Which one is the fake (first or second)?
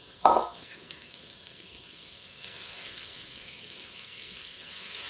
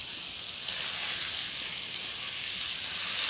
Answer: first